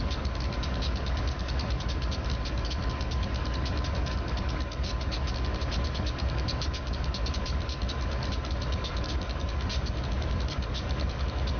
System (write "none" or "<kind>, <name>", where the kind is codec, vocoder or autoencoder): codec, DAC